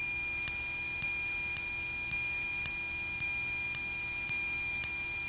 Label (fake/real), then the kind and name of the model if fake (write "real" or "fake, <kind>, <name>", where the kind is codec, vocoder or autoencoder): real